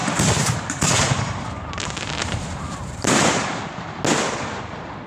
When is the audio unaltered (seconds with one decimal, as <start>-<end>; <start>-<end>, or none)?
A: 1.4-2.2; 3.5-5.1